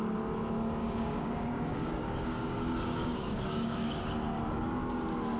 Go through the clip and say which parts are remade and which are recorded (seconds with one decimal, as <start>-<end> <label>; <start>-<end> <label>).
0.0-0.8 recorded; 0.8-4.0 remade; 4.0-5.4 recorded